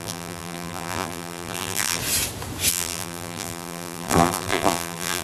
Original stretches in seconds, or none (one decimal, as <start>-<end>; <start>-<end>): 2.0-2.7